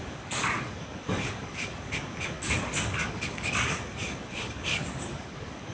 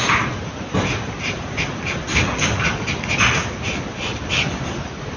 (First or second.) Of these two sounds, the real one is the second